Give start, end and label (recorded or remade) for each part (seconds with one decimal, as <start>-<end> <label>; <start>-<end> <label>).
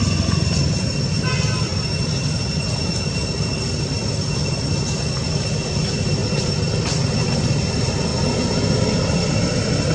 0.0-9.9 recorded